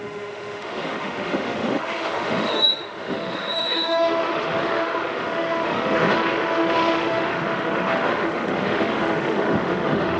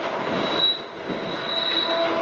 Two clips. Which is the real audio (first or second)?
second